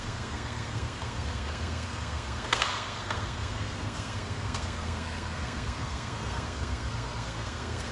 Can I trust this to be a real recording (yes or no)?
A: no